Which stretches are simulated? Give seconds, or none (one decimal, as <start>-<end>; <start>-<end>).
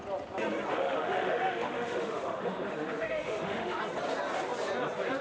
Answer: 0.7-3.8